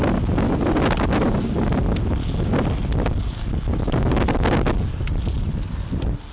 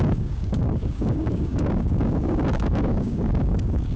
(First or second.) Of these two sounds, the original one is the first